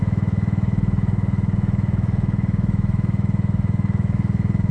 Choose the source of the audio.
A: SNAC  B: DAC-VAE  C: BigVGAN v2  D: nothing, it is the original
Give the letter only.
B